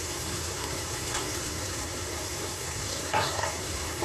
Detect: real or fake fake